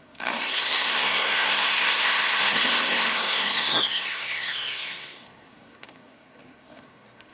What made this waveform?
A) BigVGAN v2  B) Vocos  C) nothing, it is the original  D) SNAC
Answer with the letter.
D